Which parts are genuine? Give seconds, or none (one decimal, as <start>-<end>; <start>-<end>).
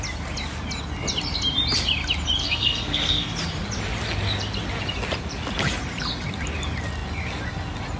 0.0-2.4; 3.3-8.0